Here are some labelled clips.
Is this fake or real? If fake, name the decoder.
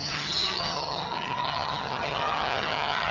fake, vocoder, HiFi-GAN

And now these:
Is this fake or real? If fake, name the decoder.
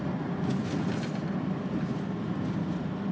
real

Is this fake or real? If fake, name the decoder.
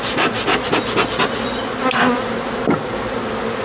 real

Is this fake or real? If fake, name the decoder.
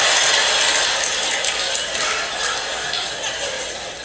real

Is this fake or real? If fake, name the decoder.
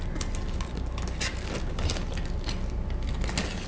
real